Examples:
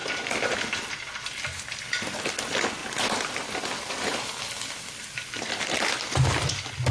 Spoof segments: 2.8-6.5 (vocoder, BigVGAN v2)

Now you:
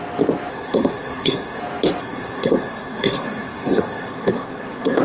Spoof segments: 0.5-1.6 (codec, SNAC); 2.0-5.0